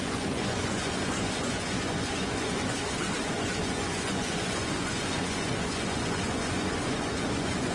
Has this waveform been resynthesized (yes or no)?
yes